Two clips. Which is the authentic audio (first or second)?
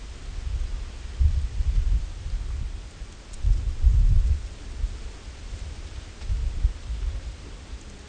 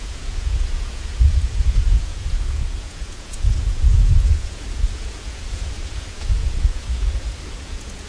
first